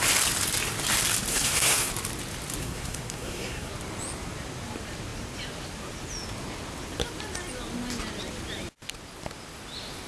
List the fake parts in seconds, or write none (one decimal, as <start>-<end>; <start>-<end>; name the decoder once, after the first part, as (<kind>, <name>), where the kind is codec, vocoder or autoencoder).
1.3-1.9 (codec, SNAC); 2.6-3.7